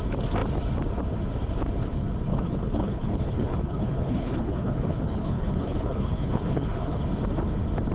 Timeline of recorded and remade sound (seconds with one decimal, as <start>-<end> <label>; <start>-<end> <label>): 0.0-2.3 recorded; 2.3-7.0 remade; 7.0-7.9 recorded